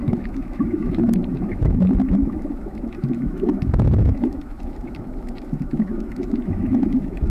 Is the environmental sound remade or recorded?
remade